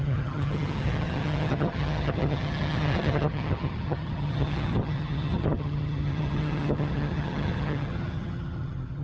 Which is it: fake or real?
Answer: fake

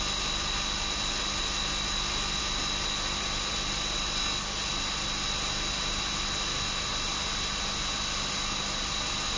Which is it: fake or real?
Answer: real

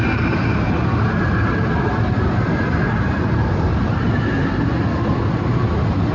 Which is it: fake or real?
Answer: real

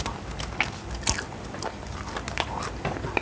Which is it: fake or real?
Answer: real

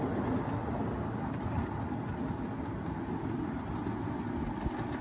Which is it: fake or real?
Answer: real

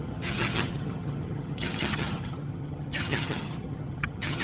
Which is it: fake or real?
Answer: fake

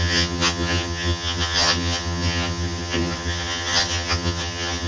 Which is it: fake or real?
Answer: fake